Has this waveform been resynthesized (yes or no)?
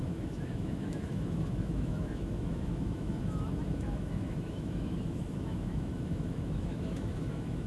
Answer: yes